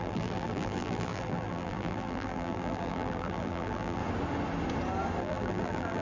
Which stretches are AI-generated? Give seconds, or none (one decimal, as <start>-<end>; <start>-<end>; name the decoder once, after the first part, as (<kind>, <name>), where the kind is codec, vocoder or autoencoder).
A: 0.0-4.0 (vocoder, BigVGAN v2); 5.2-6.0